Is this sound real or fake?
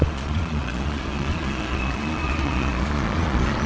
fake